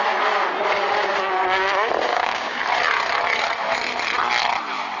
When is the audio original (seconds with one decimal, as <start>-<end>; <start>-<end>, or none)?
0.0-2.1; 2.6-5.0